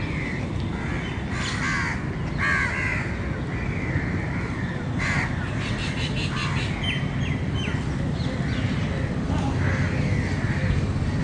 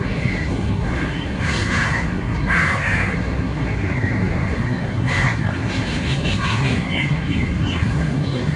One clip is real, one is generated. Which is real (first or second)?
first